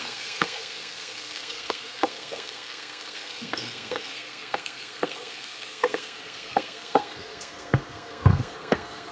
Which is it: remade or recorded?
remade